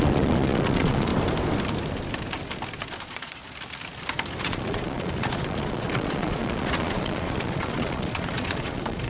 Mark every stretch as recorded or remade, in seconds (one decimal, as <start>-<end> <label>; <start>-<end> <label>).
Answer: 0.0-1.1 remade; 1.1-3.0 recorded; 3.0-3.4 remade; 3.4-4.4 recorded; 4.4-9.1 remade